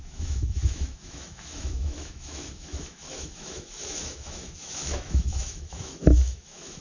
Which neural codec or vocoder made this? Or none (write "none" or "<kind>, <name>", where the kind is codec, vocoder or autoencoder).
autoencoder, DAC-VAE